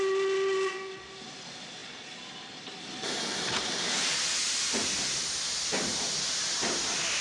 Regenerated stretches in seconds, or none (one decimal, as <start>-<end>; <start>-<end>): none